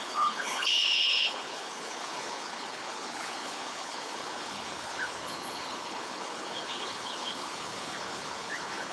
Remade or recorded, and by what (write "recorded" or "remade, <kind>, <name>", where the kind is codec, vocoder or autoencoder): remade, codec, HILCodec